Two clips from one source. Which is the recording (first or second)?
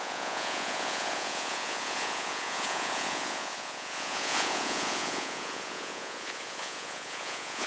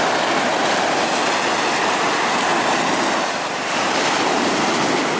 second